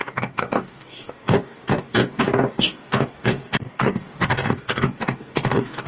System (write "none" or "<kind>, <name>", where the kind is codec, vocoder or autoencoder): codec, DAC